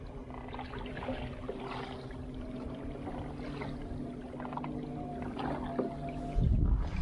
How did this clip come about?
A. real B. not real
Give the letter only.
A